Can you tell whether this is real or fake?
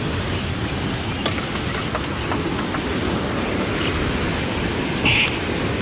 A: real